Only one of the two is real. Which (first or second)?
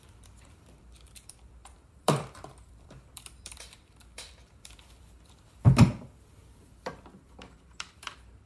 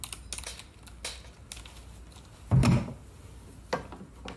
second